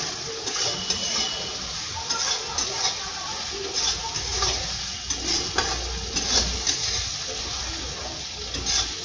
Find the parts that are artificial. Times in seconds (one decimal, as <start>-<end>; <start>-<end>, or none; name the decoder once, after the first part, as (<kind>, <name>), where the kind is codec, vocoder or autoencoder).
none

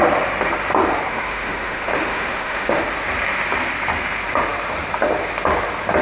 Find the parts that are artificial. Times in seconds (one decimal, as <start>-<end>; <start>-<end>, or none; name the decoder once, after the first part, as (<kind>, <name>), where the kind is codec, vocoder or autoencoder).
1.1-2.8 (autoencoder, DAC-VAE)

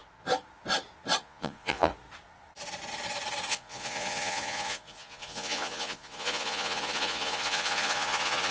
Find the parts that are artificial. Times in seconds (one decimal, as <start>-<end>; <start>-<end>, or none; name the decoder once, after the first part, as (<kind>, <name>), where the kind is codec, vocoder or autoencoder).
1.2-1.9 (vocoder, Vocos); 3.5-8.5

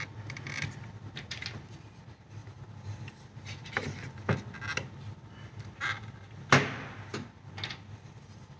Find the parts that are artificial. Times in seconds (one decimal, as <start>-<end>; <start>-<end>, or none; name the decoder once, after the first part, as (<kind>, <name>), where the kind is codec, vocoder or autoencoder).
none